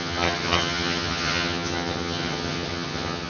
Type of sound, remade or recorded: remade